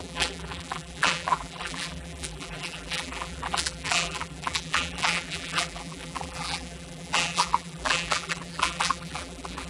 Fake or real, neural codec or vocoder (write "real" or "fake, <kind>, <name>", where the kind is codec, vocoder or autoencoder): fake, vocoder, BigVGAN v2